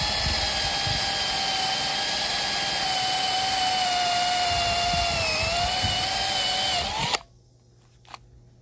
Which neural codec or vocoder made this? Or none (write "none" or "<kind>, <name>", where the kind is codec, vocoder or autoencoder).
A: none